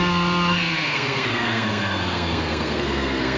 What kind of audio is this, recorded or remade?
remade